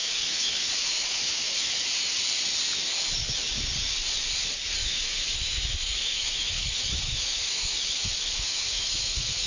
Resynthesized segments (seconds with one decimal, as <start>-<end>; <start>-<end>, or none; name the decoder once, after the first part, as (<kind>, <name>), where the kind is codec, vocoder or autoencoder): 0.0-1.8 (autoencoder, DAC-VAE); 4.8-9.5